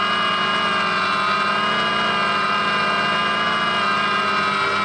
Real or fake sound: real